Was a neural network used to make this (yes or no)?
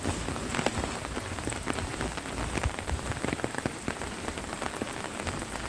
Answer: no